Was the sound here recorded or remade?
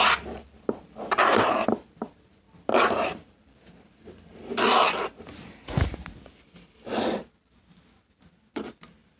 remade